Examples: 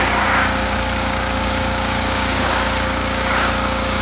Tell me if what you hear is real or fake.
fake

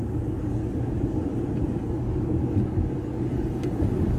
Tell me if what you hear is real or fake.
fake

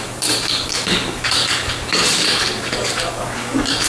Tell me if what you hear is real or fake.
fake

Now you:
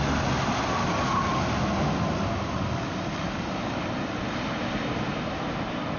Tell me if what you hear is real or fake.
real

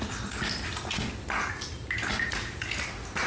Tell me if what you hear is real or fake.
real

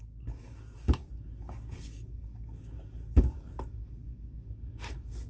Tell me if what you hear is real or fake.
fake